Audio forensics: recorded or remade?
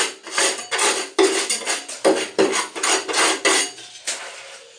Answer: recorded